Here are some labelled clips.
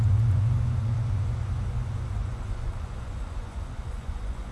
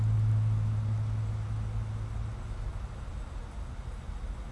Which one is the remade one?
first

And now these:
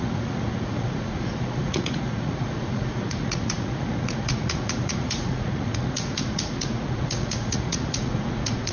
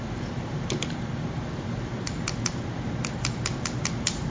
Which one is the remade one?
first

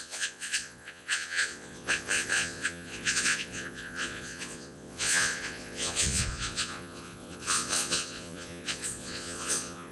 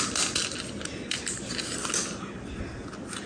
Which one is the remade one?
first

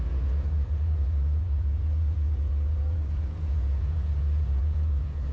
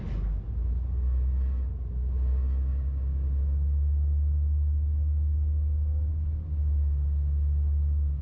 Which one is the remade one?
first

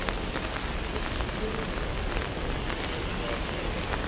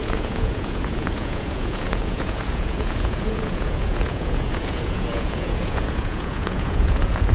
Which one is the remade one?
second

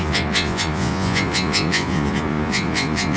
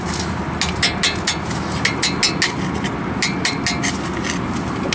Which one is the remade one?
first